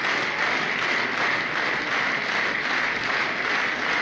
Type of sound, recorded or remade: recorded